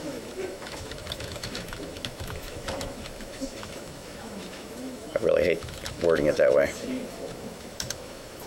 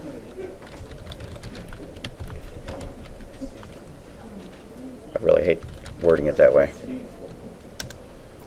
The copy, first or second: first